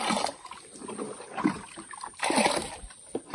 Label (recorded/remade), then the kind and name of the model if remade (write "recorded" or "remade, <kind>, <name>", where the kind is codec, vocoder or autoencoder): recorded